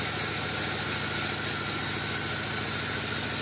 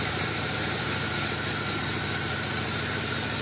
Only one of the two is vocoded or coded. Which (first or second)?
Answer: second